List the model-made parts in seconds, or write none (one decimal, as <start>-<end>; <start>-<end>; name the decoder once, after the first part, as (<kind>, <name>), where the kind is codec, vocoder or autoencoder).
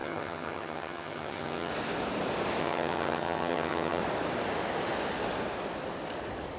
0.0-1.7 (vocoder, HiFi-GAN); 2.6-4.0